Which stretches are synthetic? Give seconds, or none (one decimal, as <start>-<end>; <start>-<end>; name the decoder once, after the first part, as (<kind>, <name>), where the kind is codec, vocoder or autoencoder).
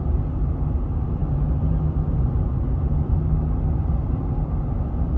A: none